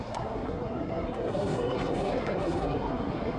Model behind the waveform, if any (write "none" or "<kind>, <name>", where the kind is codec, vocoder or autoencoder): codec, SNAC